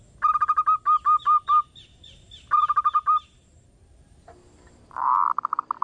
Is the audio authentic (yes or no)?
yes